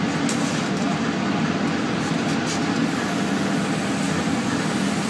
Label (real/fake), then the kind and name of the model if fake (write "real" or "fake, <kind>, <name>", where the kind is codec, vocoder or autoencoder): real